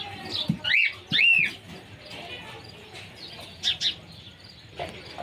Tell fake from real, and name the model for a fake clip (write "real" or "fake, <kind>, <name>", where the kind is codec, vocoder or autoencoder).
real